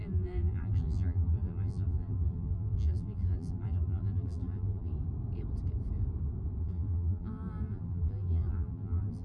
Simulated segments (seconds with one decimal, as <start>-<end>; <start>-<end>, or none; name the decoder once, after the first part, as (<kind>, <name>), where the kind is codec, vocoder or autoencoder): 0.0-4.9 (vocoder, BigVGAN v2); 6.6-9.2